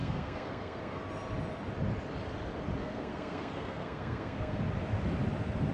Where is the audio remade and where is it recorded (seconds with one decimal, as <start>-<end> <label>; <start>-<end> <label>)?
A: 0.0-1.0 remade; 1.0-2.8 recorded; 2.8-4.6 remade; 4.6-5.7 recorded

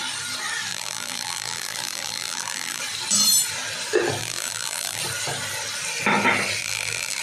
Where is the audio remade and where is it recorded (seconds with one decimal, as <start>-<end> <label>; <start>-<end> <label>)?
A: 0.0-0.7 recorded; 0.7-2.8 remade; 2.8-4.2 recorded; 4.2-5.0 remade; 5.0-6.6 recorded; 6.6-7.2 remade

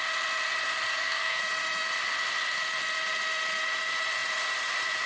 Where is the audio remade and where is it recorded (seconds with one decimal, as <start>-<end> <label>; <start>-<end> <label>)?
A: 0.0-0.9 recorded; 0.9-1.4 remade; 1.4-5.1 recorded

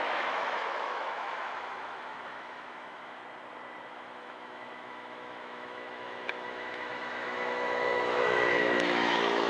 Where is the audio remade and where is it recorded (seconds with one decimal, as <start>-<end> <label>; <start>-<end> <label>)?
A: 0.0-3.2 remade; 3.2-3.9 recorded; 3.9-9.5 remade

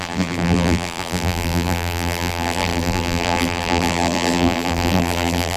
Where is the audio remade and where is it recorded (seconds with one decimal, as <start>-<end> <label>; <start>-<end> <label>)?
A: 0.0-5.6 remade

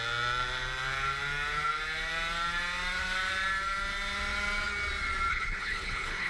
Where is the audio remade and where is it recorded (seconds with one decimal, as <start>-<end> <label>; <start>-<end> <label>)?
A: 0.0-5.3 recorded; 5.3-6.3 remade

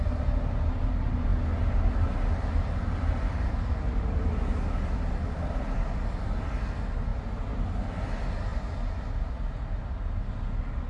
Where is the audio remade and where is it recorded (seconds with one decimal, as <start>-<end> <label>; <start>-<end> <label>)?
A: 0.0-7.1 recorded; 7.1-7.8 remade; 7.8-10.9 recorded

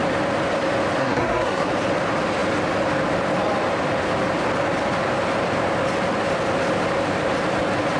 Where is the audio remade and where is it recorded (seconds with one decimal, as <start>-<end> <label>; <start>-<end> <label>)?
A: 0.0-1.0 recorded; 1.0-1.7 remade; 1.7-8.0 recorded